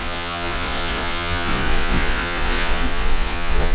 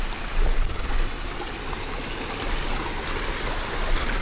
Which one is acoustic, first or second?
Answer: second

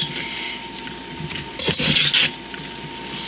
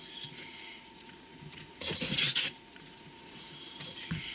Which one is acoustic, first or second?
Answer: first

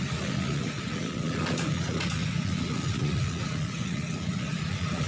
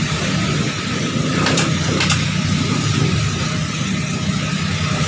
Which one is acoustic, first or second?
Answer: second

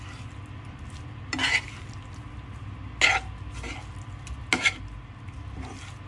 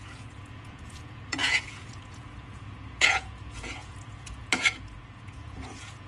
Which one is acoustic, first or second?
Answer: first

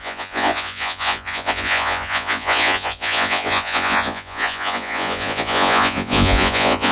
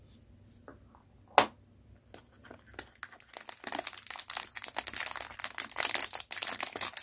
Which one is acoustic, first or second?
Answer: second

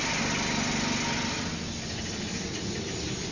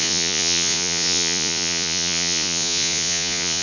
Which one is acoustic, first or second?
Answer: first